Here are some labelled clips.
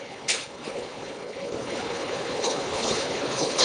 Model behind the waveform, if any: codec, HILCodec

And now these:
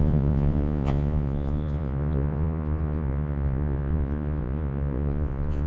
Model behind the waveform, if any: vocoder, Vocos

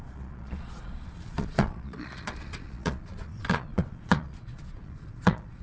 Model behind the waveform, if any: vocoder, Vocos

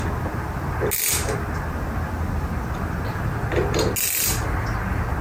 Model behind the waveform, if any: none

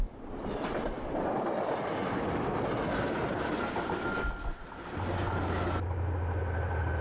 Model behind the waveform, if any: none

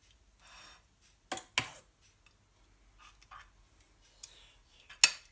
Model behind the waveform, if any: none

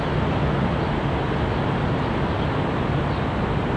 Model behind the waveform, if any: none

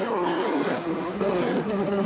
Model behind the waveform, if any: codec, SNAC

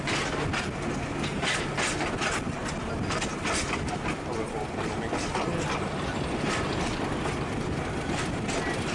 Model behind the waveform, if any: none